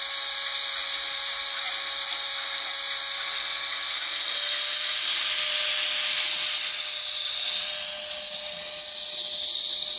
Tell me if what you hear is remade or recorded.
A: recorded